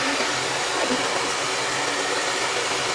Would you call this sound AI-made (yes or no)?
no